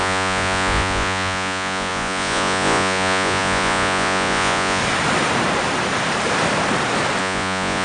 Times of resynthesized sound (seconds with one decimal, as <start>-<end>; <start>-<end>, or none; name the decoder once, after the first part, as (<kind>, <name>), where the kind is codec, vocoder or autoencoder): 0.0-4.8 (vocoder, Vocos); 7.2-7.8